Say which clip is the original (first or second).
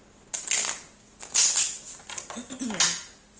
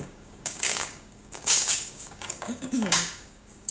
first